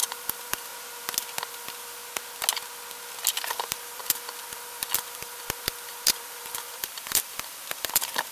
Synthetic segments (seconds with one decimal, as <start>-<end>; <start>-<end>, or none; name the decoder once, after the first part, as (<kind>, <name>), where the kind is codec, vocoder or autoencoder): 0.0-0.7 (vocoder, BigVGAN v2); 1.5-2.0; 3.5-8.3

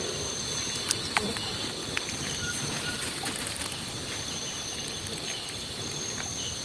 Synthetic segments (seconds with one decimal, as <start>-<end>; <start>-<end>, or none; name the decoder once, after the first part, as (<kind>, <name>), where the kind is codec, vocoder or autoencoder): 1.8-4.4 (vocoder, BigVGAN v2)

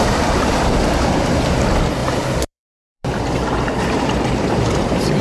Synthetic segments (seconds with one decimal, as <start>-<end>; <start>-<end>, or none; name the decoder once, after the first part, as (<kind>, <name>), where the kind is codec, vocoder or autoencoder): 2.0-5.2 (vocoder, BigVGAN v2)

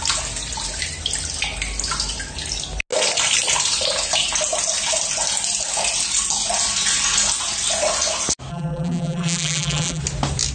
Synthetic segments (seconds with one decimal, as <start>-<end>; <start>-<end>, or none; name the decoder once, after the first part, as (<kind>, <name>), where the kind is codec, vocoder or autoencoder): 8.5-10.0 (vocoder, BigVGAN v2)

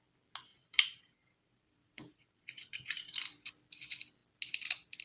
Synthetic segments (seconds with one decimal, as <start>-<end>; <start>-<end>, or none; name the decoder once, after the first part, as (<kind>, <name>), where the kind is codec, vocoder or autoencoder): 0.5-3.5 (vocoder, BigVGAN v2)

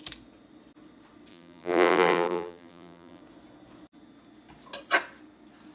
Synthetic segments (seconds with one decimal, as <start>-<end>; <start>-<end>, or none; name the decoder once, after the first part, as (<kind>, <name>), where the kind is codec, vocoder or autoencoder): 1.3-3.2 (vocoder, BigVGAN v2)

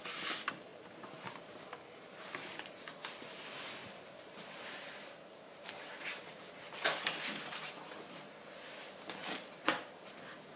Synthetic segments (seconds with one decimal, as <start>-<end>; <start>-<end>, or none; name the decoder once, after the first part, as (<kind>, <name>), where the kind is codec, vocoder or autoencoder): 0.7-2.6 (vocoder, BigVGAN v2); 3.8-6.5; 9.2-10.0

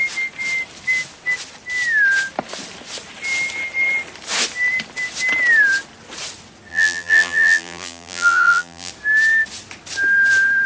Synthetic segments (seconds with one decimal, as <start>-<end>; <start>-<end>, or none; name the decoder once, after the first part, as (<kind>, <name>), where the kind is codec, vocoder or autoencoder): 6.7-8.9 (vocoder, BigVGAN v2)